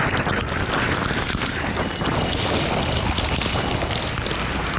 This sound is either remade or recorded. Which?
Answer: recorded